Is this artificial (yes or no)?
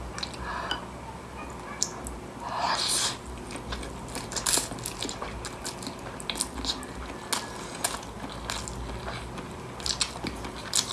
no